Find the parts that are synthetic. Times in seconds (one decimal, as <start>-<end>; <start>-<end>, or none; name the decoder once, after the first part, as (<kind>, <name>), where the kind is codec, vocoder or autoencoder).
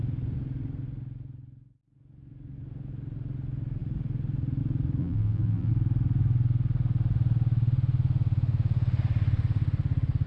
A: 5.0-5.7 (vocoder, BigVGAN v2)